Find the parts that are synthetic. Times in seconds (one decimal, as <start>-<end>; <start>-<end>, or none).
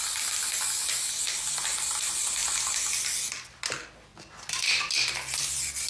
0.8-1.8; 2.4-3.0